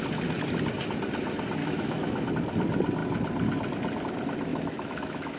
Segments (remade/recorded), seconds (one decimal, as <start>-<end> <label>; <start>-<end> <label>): 0.0-1.6 recorded; 1.6-2.3 remade; 2.3-4.5 recorded; 4.5-5.4 remade